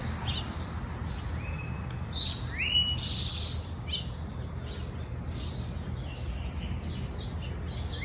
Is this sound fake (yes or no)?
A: no